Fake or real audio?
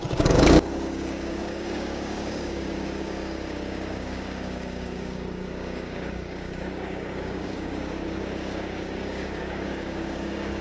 fake